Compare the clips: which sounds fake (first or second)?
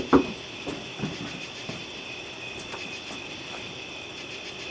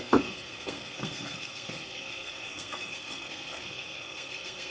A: second